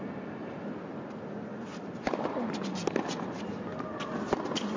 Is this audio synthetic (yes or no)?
no